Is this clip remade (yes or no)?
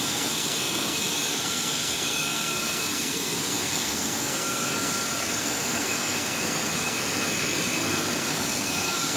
yes